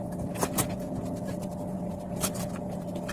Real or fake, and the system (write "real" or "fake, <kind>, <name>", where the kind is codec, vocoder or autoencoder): real